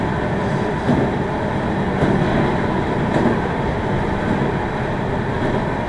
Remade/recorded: recorded